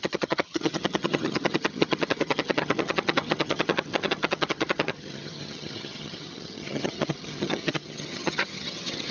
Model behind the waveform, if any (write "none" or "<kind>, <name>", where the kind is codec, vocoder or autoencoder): vocoder, HiFi-GAN